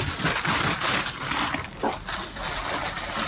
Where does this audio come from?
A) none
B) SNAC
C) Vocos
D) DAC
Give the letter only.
A